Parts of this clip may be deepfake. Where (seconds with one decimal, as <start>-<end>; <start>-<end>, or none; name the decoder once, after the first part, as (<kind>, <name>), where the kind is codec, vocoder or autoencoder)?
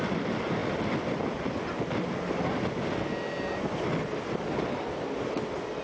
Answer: none